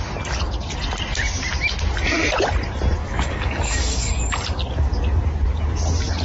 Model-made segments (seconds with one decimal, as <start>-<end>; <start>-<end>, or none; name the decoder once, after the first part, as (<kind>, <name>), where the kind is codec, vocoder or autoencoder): 3.0-4.1 (codec, DAC)